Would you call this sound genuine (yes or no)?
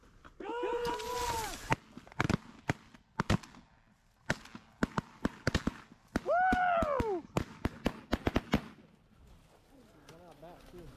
yes